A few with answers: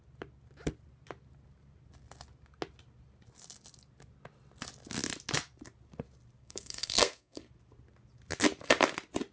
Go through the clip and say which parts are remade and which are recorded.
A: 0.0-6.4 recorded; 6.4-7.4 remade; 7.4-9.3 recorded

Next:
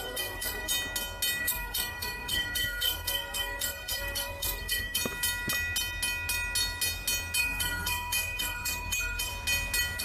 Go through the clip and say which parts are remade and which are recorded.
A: 0.0-0.7 remade; 0.7-1.4 recorded; 1.4-5.0 remade; 5.0-7.4 recorded; 7.4-9.3 remade; 9.3-10.0 recorded

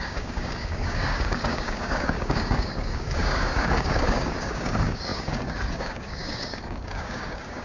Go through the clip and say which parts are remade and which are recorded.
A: 0.0-7.6 remade

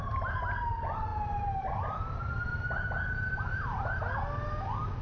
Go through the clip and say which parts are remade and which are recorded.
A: 0.0-2.5 remade; 2.5-5.0 recorded

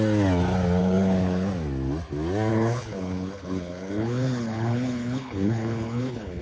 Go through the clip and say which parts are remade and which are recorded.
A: 0.0-0.8 recorded; 0.8-1.5 remade; 1.5-2.5 recorded; 2.5-6.4 remade

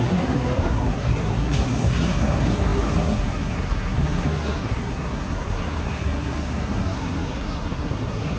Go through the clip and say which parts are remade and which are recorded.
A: 0.0-8.4 remade

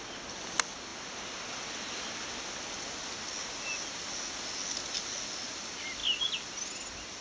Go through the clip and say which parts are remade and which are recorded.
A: 0.0-7.2 recorded